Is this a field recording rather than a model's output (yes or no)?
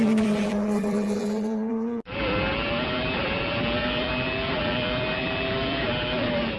no